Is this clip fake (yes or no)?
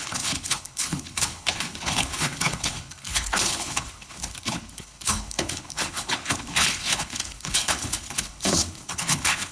yes